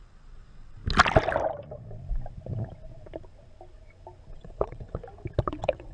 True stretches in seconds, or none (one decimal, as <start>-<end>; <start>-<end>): 0.8-4.3; 5.0-5.5